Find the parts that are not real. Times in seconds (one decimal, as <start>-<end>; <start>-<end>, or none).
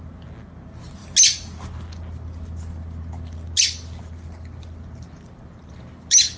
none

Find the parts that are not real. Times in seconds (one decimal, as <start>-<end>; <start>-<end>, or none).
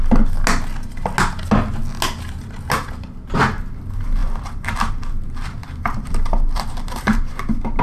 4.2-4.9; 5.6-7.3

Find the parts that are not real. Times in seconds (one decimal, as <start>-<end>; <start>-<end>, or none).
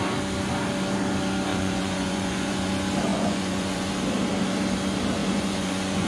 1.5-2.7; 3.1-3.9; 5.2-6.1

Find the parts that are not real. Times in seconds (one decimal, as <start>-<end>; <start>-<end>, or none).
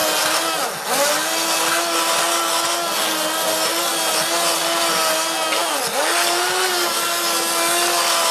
none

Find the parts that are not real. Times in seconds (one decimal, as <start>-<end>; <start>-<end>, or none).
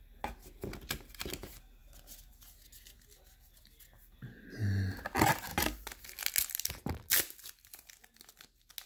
none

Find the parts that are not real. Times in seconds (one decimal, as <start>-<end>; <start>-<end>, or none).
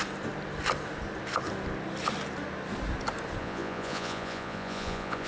3.4-5.3